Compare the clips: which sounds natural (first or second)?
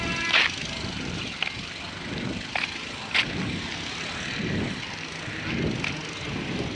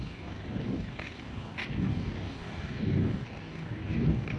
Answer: first